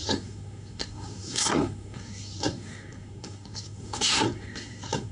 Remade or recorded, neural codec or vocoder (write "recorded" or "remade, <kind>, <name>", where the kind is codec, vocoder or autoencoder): remade, codec, SNAC